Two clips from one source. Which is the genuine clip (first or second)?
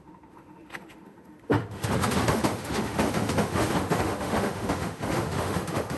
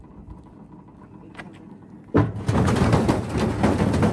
second